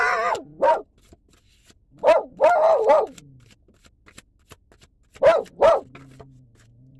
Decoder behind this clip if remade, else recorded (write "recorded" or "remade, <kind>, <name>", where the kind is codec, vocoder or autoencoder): recorded